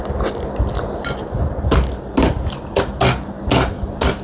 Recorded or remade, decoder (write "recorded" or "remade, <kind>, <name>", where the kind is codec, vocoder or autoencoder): recorded